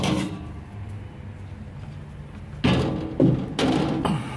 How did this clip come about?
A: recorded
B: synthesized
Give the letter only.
A